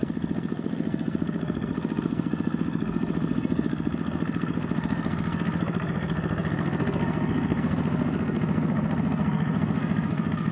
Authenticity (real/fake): fake